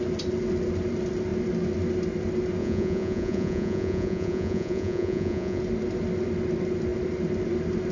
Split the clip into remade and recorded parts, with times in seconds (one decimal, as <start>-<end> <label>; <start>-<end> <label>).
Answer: 0.0-2.6 recorded; 2.6-5.6 remade; 5.6-7.9 recorded